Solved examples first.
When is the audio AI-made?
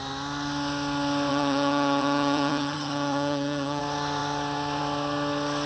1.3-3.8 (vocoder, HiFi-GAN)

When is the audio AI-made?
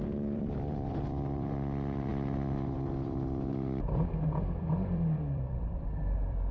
0.0-6.5 (vocoder, BigVGAN v2)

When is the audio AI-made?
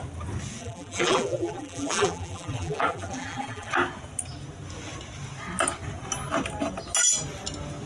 0.6-3.7 (vocoder, BigVGAN v2)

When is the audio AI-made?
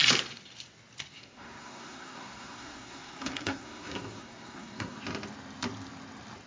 1.1-5.0 (codec, SNAC)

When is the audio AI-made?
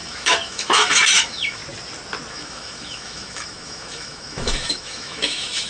0.0-1.6 (autoencoder, DAC-VAE); 2.3-5.7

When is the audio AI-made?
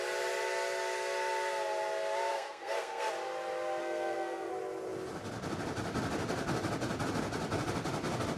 2.3-3.1 (codec, SNAC); 3.8-4.5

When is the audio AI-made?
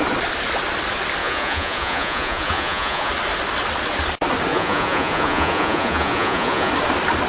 1.2-3.1 (vocoder, Vocos); 4.5-6.7